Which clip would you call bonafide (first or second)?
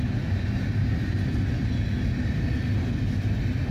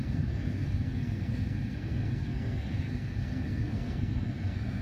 first